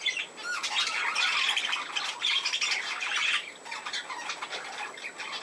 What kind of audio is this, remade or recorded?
recorded